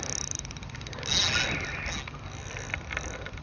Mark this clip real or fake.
real